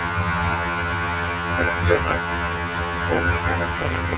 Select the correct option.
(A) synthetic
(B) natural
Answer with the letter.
A